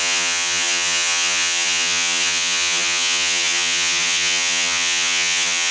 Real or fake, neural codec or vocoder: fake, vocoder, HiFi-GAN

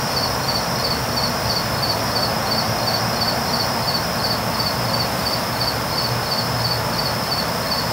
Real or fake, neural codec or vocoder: real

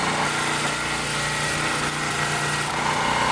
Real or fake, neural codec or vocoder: real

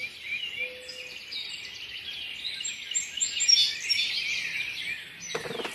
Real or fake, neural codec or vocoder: real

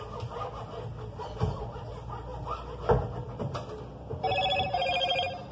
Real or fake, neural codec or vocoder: real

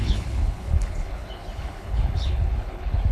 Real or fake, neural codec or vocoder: fake, codec, HILCodec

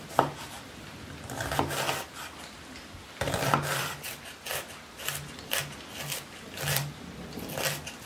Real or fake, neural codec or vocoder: real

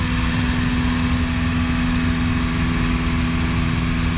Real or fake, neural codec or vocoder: real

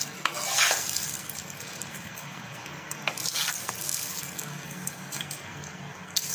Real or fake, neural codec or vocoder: fake, codec, SNAC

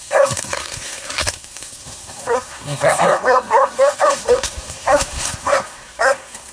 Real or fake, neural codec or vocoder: fake, codec, SNAC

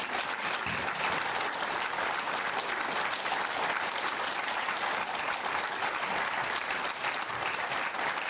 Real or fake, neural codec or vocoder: real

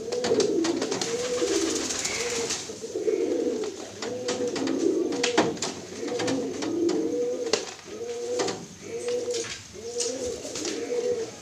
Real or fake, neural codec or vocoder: real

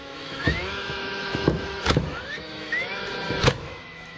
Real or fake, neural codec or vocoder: fake, autoencoder, DAC-VAE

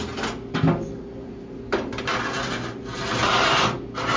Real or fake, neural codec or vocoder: real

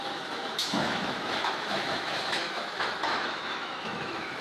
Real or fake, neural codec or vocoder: fake, autoencoder, DAC-VAE